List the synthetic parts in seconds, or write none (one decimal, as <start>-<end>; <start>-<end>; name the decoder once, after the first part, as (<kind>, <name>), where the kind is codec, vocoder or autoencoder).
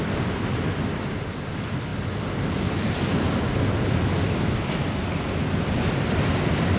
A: none